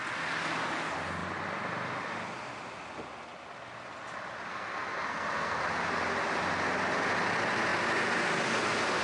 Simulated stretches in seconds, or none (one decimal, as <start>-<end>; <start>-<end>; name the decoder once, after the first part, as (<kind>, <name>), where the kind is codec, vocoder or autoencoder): 4.5-5.6 (codec, SNAC)